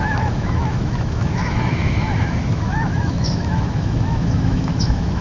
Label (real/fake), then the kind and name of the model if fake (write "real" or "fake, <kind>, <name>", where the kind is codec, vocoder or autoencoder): fake, autoencoder, DAC-VAE